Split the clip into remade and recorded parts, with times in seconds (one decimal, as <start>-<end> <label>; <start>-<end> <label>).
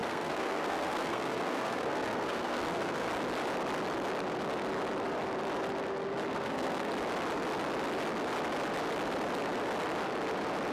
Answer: 0.0-3.1 remade; 3.1-6.3 recorded; 6.3-6.9 remade; 6.9-10.7 recorded